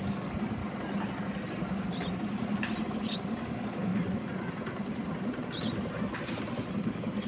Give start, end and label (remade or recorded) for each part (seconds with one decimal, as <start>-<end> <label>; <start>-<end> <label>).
0.0-0.6 remade; 0.6-2.9 recorded; 2.9-3.9 remade; 3.9-6.7 recorded; 6.7-7.3 remade